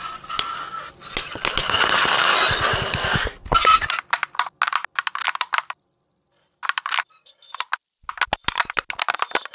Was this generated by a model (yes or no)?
no